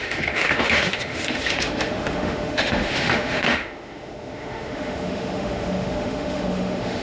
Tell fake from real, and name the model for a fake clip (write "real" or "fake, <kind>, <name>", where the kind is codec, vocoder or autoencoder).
fake, autoencoder, DAC-VAE